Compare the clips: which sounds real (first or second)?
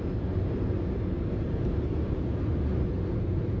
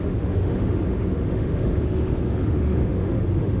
first